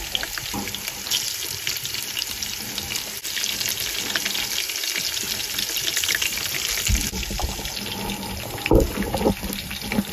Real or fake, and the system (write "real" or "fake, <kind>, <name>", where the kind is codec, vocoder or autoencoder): real